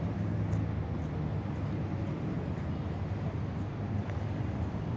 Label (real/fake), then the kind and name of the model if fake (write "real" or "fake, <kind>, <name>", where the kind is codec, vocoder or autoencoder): real